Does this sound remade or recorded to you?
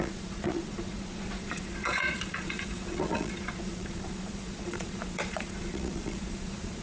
remade